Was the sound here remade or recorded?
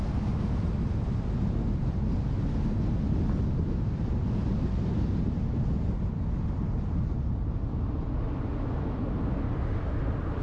recorded